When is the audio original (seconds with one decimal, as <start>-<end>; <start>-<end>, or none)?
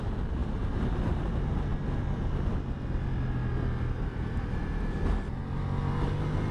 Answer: 0.0-6.5